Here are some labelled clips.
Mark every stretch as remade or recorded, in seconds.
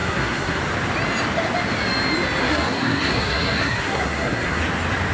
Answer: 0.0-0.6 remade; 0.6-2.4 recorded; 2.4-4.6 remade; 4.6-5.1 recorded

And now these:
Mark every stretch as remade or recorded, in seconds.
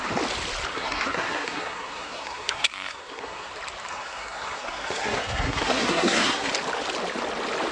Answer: 0.0-0.7 recorded; 0.7-3.5 remade; 3.5-3.9 recorded; 3.9-6.5 remade; 6.5-7.7 recorded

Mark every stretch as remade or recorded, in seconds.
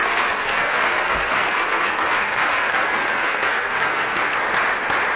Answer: 0.0-4.3 remade; 4.3-5.2 recorded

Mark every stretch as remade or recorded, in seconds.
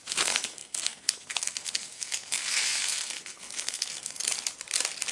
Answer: 0.0-4.2 remade; 4.2-5.1 recorded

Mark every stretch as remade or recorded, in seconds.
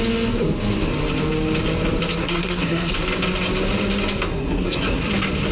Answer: 0.0-2.2 recorded; 2.2-2.9 remade; 2.9-4.3 recorded; 4.3-5.1 remade; 5.1-5.5 recorded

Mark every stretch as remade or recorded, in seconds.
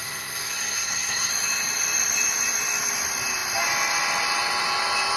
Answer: 0.0-1.3 remade; 1.3-5.2 recorded